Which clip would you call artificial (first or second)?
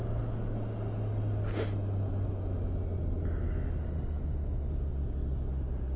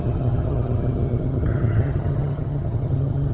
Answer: second